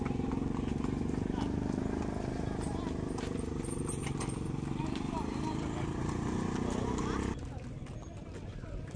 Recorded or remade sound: recorded